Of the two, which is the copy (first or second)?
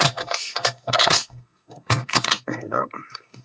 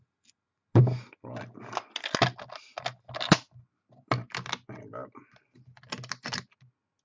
first